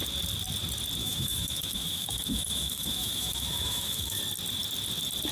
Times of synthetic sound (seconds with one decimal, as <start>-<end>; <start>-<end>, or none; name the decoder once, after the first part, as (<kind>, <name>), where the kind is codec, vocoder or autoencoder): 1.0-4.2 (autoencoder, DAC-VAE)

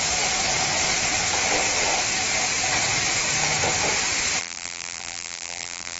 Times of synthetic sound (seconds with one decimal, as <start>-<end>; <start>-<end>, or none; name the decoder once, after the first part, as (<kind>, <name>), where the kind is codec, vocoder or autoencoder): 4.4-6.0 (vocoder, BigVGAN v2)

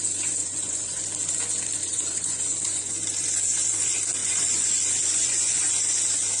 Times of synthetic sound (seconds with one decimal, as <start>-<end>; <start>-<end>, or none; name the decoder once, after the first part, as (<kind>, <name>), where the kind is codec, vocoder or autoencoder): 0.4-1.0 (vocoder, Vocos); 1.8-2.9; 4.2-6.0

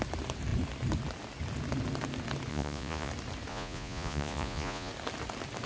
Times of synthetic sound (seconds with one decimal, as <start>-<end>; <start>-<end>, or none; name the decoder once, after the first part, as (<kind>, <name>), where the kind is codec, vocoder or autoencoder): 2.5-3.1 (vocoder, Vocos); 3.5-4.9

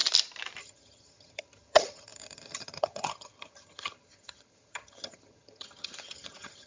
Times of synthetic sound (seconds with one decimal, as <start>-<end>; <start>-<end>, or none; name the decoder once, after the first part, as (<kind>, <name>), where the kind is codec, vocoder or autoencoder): 0.6-6.7 (vocoder, HiFi-GAN)